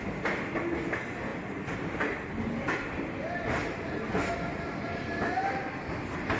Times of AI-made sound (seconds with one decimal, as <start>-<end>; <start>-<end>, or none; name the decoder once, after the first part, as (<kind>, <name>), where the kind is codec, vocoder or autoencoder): 1.3-1.8 (vocoder, BigVGAN v2); 4.5-5.1